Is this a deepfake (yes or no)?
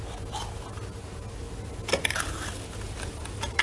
no